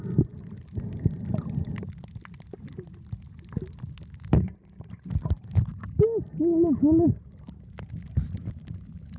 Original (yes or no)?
yes